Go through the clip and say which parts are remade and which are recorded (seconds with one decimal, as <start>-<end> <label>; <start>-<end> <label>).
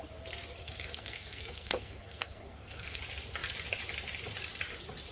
0.0-0.6 recorded; 0.6-3.0 remade; 3.0-5.1 recorded